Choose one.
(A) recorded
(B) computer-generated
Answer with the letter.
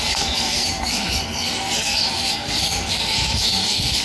B